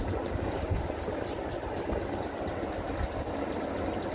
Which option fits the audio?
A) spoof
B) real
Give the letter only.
B